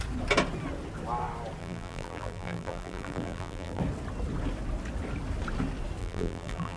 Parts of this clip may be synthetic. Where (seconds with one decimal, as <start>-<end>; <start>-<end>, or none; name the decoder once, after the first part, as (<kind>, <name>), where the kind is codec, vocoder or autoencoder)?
1.6-3.8 (vocoder, BigVGAN v2); 6.0-6.8